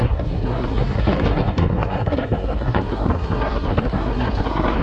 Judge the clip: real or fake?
fake